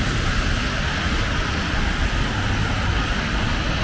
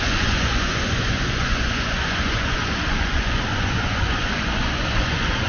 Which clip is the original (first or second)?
first